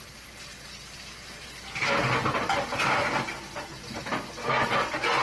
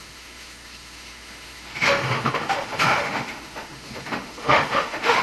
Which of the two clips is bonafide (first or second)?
first